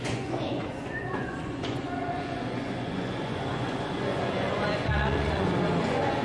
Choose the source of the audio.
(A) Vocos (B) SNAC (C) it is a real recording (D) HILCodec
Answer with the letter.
A